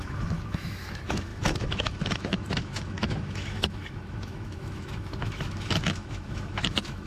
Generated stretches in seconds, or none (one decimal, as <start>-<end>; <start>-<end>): 0.0-7.1